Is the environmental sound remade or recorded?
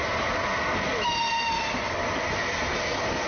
recorded